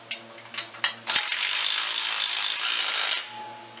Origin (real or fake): real